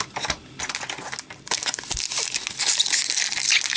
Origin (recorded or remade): recorded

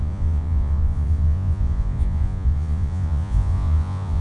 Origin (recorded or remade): remade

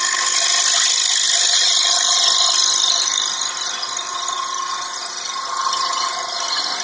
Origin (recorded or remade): recorded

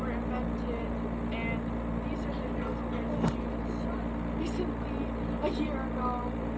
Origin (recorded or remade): recorded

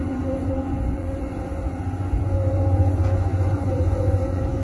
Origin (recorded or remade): remade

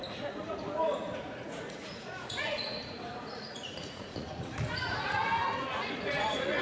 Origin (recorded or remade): remade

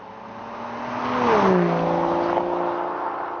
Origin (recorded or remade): recorded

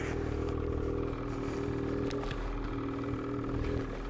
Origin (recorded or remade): recorded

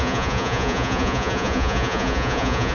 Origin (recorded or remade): remade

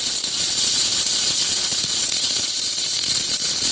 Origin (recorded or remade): remade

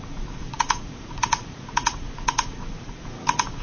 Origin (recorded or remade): remade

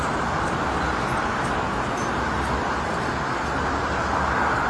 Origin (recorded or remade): recorded